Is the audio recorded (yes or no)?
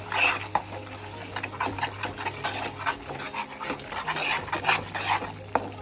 yes